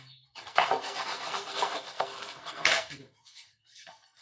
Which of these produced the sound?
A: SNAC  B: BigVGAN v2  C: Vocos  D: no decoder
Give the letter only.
A